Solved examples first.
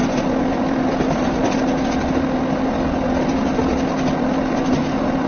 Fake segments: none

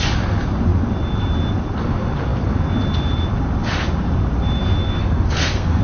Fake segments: 5.0-5.8 (codec, SNAC)

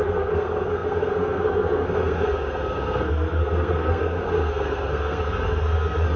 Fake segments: 0.0-6.2 (codec, SNAC)

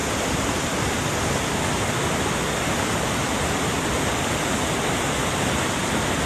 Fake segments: none

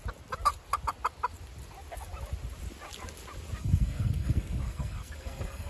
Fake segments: 3.6-5.7 (codec, SNAC)

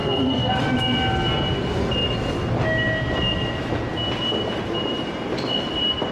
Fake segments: 0.0-0.6 (codec, SNAC)

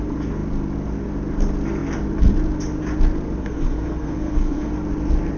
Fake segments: 3.4-4.7 (codec, SNAC)

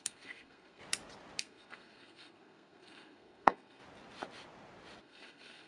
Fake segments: 0.0-0.8 (codec, SNAC); 1.4-3.8; 5.0-5.7